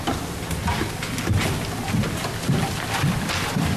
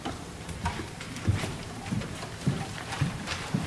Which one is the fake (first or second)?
second